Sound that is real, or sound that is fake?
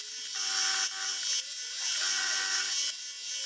real